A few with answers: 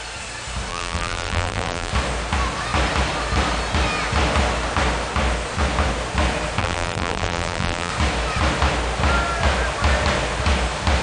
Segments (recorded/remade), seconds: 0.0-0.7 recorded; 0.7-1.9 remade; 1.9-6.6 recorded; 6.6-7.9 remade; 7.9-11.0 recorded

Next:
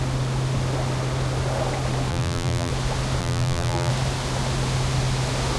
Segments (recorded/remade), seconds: 0.0-2.1 recorded; 2.1-2.7 remade; 2.7-3.2 recorded; 3.2-3.9 remade; 3.9-5.6 recorded

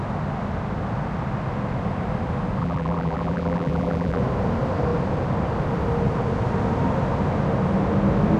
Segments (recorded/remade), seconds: 0.0-2.6 recorded; 2.6-4.2 remade; 4.2-8.4 recorded

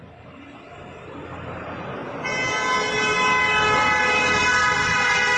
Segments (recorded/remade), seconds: 0.0-5.4 recorded

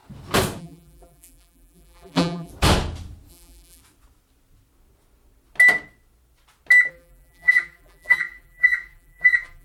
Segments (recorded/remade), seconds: 0.0-0.6 recorded; 0.6-2.5 remade; 2.5-3.3 recorded; 3.3-3.8 remade; 3.8-6.9 recorded; 6.9-9.6 remade